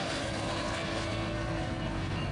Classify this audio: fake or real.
fake